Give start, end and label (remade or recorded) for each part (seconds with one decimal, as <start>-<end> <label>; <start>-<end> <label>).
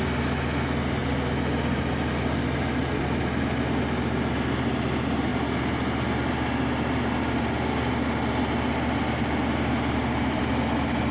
0.0-11.1 recorded